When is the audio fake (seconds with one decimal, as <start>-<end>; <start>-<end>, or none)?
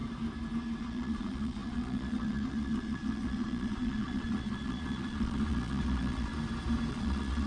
0.8-6.3; 6.9-7.5